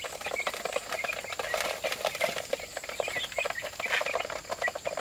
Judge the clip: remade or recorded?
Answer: recorded